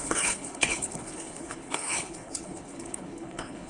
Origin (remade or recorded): remade